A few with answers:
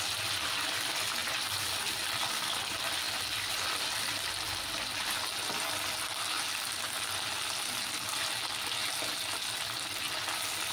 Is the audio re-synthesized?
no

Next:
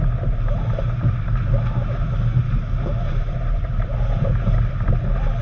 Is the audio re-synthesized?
no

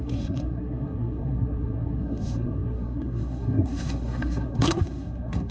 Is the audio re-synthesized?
yes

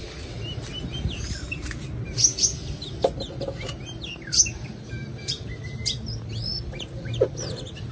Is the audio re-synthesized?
no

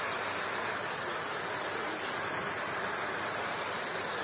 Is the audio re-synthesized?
no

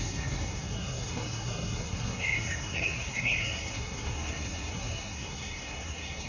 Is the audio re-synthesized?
yes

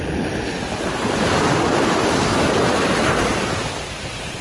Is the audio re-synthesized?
yes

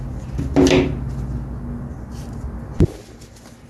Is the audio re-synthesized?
no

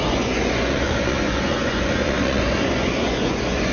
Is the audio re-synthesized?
yes